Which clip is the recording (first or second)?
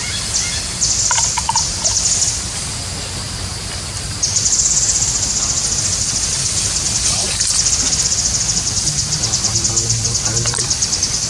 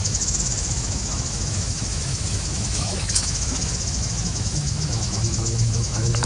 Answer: first